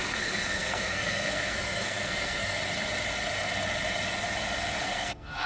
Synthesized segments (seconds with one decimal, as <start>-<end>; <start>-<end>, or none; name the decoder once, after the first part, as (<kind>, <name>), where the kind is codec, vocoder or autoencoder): 0.0-2.6 (codec, SNAC); 4.8-5.5